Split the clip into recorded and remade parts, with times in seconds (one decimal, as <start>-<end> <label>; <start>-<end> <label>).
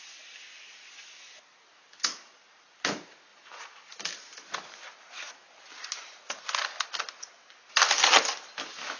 0.0-9.0 recorded